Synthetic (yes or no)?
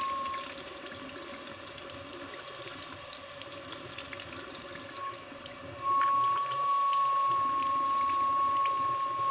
no